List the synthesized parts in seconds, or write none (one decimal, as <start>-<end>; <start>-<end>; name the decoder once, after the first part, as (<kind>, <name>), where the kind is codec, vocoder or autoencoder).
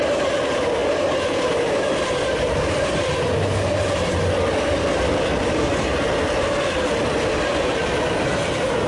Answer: none